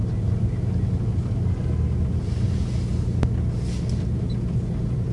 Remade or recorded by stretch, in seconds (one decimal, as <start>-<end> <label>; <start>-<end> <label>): 0.0-5.1 recorded

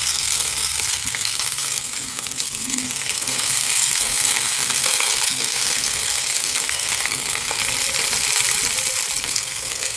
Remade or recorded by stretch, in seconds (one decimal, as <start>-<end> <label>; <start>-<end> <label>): 0.0-7.6 remade; 7.6-9.2 recorded; 9.2-10.0 remade

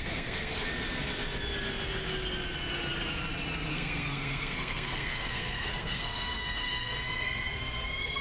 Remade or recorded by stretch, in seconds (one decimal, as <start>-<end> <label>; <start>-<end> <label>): 0.0-0.7 remade; 0.7-3.7 recorded; 3.7-8.2 remade

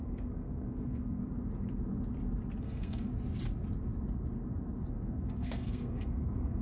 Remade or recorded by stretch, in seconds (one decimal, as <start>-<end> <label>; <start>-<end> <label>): 0.0-1.2 remade; 1.2-2.6 recorded; 2.6-3.1 remade; 3.1-4.9 recorded; 4.9-6.6 remade